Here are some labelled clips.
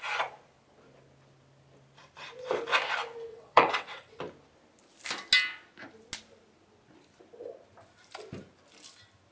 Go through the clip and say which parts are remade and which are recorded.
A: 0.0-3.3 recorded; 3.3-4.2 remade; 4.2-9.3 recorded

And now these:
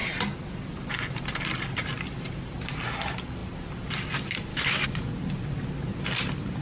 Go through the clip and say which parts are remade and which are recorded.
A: 0.0-4.5 recorded; 4.5-5.0 remade; 5.0-6.6 recorded

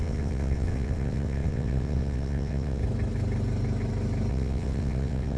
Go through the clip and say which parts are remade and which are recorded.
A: 0.0-2.8 remade; 2.8-4.3 recorded; 4.3-5.4 remade